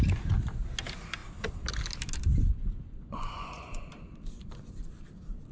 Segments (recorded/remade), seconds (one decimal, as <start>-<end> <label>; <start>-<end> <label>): 0.0-2.3 recorded; 2.3-3.9 remade; 3.9-5.5 recorded